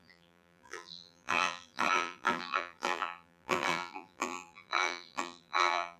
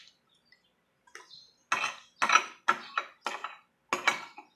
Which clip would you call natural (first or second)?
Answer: second